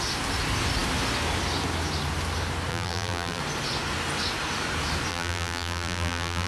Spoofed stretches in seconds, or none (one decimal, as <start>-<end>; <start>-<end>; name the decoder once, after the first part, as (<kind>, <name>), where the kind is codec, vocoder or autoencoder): 2.7-3.4 (vocoder, BigVGAN v2); 5.1-6.5

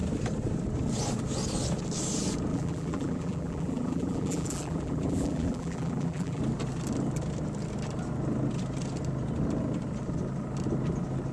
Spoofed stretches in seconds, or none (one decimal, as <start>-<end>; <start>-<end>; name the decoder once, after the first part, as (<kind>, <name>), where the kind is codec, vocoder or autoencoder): 2.5-6.4 (vocoder, BigVGAN v2)